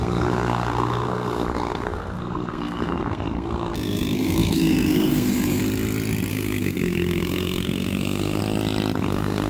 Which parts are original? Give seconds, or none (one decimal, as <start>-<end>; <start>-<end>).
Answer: 5.6-6.3; 8.4-9.0